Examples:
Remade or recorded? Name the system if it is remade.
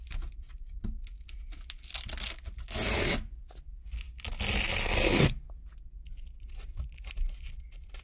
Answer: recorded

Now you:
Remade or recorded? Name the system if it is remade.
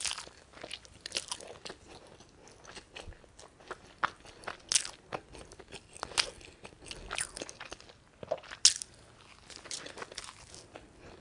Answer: recorded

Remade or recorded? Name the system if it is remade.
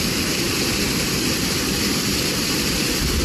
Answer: recorded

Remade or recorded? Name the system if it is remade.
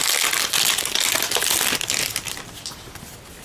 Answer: recorded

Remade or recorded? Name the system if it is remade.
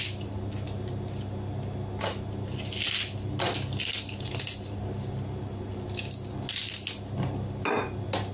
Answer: recorded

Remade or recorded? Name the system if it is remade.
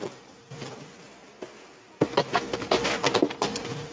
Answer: recorded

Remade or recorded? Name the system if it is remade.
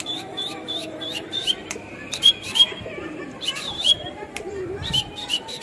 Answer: remade, vocoder, BigVGAN v2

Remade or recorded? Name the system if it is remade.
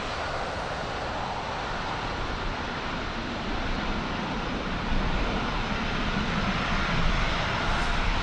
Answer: recorded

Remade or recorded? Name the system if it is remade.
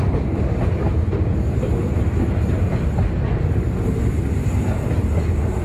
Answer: recorded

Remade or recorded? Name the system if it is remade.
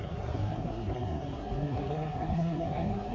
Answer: remade, codec, SNAC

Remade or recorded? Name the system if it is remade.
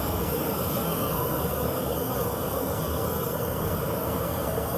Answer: remade, codec, SNAC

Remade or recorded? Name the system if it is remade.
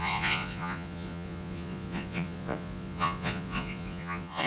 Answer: remade, vocoder, Vocos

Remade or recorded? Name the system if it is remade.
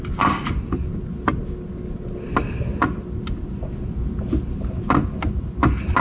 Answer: recorded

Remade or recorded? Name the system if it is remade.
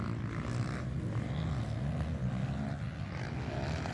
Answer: recorded